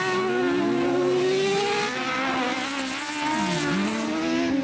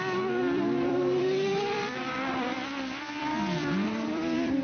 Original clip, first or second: first